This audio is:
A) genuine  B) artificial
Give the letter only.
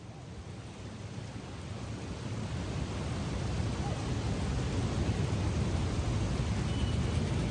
A